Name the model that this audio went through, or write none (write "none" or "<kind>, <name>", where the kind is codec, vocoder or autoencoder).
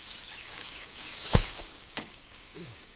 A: codec, DAC